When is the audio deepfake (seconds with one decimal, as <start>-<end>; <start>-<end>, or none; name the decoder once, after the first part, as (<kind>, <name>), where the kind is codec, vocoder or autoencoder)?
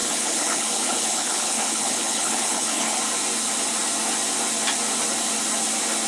0.0-3.0 (codec, HILCodec)